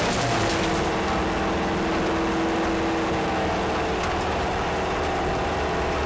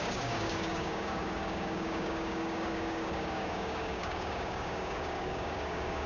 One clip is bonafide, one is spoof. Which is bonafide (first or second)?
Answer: first